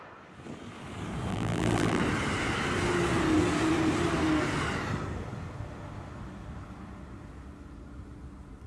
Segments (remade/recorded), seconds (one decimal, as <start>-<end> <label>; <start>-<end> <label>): 0.0-1.3 recorded; 1.3-2.0 remade; 2.0-8.7 recorded